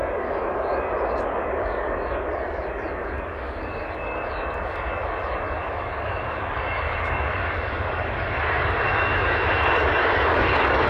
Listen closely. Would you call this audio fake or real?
fake